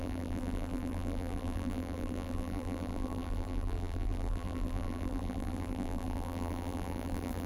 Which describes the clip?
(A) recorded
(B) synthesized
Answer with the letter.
B